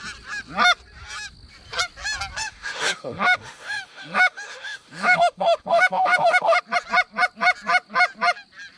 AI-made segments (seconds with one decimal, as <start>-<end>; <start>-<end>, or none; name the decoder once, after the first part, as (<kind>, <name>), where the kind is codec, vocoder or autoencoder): 2.4-6.6 (autoencoder, DAC-VAE)